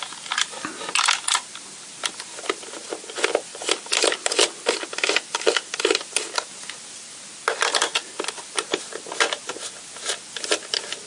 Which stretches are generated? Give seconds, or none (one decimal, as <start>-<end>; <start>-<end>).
none